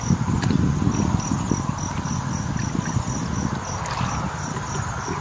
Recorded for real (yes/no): yes